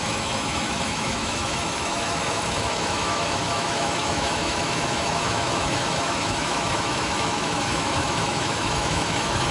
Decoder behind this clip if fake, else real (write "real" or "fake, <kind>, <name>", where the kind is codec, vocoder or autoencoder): fake, autoencoder, DAC-VAE